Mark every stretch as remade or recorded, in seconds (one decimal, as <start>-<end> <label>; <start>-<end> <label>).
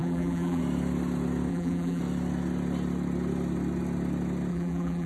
0.0-0.6 remade; 0.6-1.5 recorded; 1.5-2.0 remade; 2.0-4.5 recorded; 4.5-5.1 remade